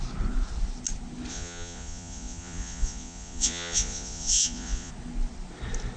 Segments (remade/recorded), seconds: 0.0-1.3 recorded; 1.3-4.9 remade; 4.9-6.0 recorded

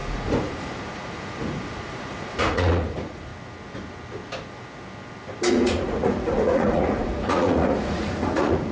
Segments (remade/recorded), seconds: 0.0-3.3 remade; 3.3-5.5 recorded; 5.5-8.7 remade

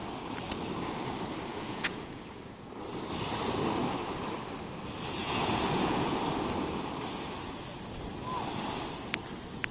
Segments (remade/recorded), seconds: 0.0-1.5 recorded; 1.5-2.2 remade; 2.2-5.2 recorded; 5.2-6.2 remade; 6.2-9.7 recorded

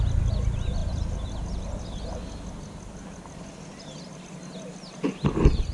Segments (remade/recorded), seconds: 0.0-5.7 recorded

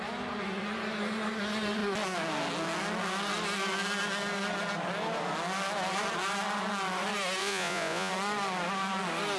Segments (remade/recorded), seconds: 0.0-7.4 recorded; 7.4-8.1 remade; 8.1-9.4 recorded

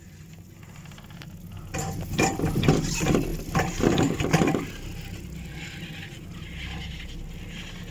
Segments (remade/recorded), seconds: 0.0-7.9 recorded

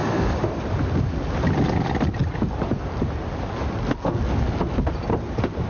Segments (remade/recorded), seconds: 0.0-5.7 recorded

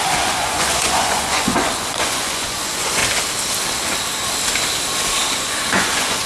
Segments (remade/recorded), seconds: 0.0-3.0 remade; 3.0-5.3 recorded; 5.3-6.3 remade